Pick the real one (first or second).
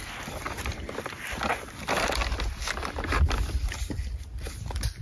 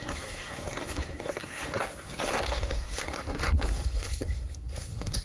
first